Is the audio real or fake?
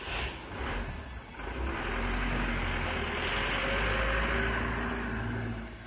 real